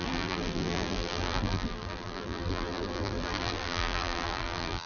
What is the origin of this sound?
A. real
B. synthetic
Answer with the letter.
B